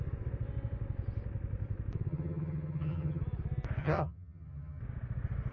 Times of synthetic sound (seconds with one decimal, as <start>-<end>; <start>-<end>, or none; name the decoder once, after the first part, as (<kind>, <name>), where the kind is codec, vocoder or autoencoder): 2.1-3.2 (vocoder, HiFi-GAN); 3.8-4.8